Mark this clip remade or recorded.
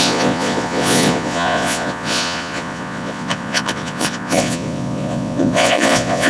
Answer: remade